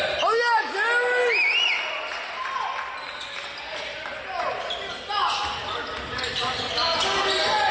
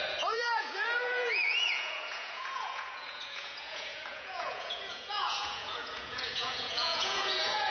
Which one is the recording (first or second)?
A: first